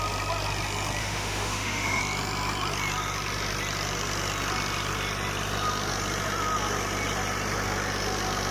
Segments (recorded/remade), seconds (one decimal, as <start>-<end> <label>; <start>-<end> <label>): 0.0-1.0 recorded; 1.0-2.0 remade; 2.0-8.5 recorded